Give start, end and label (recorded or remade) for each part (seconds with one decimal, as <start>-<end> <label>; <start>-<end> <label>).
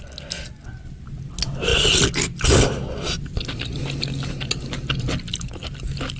0.0-6.2 recorded